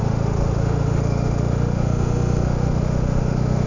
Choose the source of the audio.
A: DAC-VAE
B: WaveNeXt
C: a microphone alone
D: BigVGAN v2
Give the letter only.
A